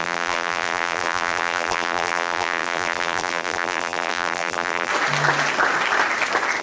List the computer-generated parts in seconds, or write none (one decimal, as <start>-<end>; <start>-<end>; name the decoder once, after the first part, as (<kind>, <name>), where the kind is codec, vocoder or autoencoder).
0.0-4.9 (vocoder, BigVGAN v2)